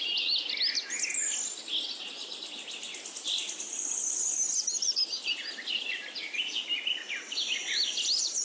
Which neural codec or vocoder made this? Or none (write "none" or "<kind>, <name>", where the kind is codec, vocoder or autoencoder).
none